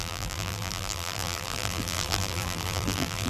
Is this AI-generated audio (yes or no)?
yes